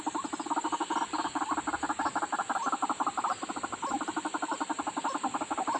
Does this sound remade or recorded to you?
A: recorded